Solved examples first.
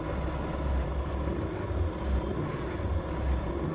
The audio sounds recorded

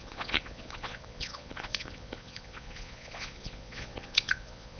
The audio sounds remade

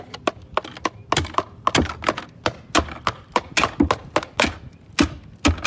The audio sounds recorded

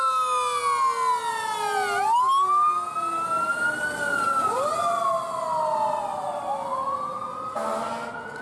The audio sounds recorded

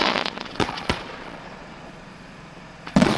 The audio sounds remade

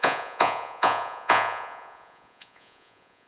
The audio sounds remade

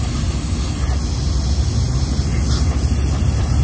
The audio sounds recorded